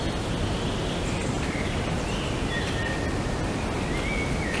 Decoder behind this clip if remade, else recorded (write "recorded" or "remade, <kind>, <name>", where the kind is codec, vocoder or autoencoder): recorded